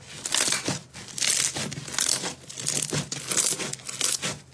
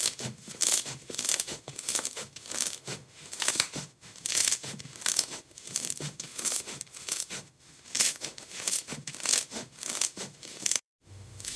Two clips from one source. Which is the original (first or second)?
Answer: first